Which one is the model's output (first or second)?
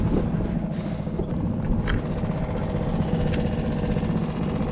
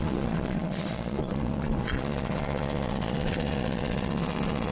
second